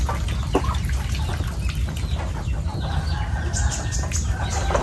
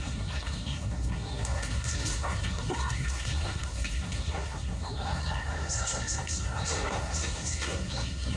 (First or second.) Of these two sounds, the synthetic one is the second